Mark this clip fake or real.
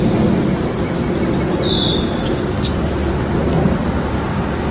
real